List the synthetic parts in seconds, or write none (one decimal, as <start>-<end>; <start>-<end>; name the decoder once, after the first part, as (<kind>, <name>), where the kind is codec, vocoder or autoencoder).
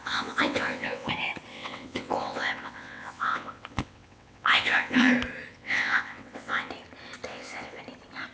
0.0-1.1 (vocoder, WaveNeXt); 1.5-5.1; 5.5-6.7; 7.3-7.8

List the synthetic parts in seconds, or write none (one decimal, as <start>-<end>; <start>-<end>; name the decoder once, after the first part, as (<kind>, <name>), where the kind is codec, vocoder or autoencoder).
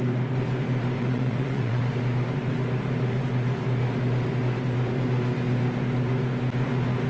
1.0-1.8 (vocoder, WaveNeXt)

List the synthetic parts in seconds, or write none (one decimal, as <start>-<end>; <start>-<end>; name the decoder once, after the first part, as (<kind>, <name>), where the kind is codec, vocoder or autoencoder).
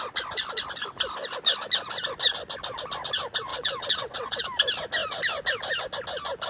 3.5-4.4 (vocoder, WaveNeXt)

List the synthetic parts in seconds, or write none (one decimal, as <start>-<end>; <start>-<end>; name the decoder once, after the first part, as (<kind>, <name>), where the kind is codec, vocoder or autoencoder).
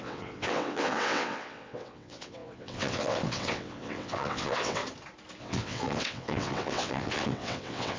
0.0-4.8 (vocoder, WaveNeXt); 5.4-8.0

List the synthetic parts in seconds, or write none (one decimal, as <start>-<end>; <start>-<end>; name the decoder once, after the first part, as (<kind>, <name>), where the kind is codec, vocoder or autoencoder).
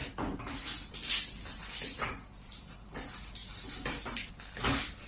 none